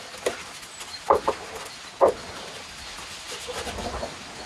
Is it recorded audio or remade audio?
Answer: recorded